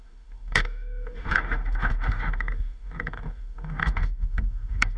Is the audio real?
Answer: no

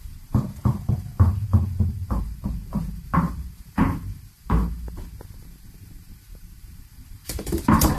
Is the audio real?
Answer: no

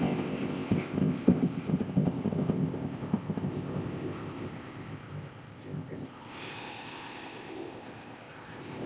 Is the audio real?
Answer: no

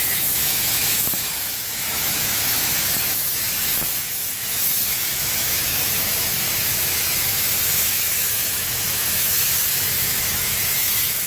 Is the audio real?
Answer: no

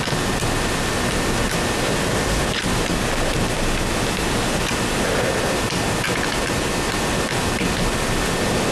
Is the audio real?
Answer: yes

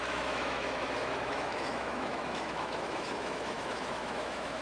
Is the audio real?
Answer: no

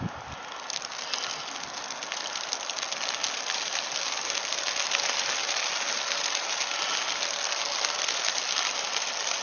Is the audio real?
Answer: yes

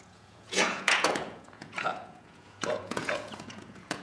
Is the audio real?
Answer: no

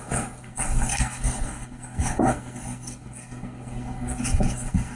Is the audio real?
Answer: no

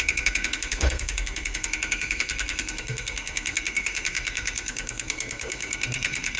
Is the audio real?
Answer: no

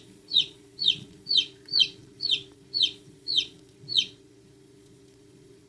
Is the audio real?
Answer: no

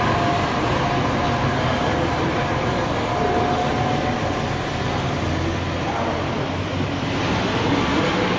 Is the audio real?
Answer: yes